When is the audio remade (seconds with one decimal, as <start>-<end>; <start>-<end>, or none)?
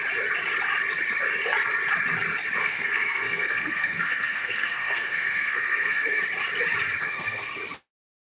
2.6-6.2; 7.0-7.5